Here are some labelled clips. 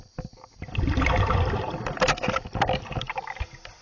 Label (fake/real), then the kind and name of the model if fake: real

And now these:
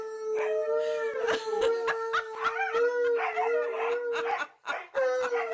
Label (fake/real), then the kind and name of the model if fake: real